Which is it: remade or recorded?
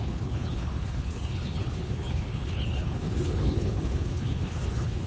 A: remade